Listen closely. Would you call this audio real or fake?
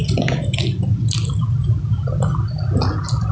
real